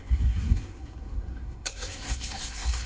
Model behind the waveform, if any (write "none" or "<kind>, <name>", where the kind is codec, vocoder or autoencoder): codec, SNAC